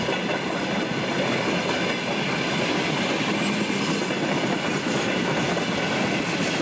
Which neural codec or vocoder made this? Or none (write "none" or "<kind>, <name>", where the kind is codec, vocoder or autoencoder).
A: none